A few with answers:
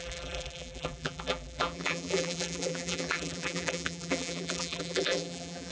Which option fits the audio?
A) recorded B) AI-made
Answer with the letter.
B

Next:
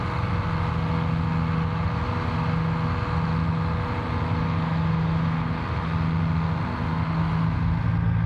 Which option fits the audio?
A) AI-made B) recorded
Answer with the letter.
B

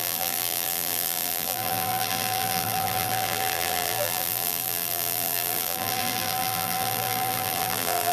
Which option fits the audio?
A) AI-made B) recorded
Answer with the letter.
A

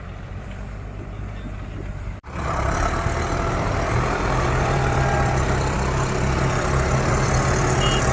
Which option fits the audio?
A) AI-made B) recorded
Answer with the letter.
A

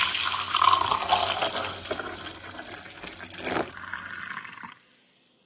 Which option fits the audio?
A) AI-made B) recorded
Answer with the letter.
B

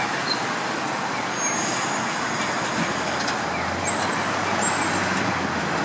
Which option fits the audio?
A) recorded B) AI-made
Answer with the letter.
A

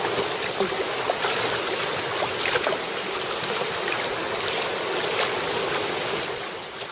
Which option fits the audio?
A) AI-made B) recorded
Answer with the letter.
B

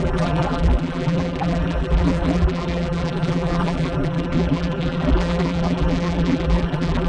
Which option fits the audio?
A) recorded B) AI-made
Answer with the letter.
B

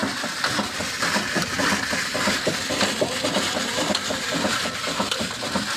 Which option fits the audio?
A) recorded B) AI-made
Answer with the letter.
B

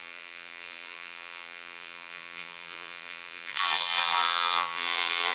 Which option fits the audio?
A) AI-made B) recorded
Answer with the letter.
A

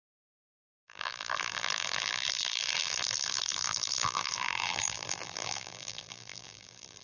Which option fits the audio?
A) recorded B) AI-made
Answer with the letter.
B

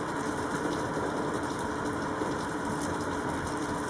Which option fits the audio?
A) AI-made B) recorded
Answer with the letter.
A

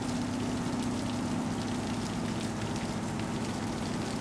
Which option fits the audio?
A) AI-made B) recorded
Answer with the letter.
B